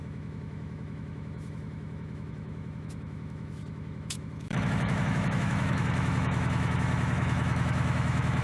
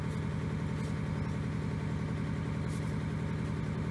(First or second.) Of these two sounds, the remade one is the first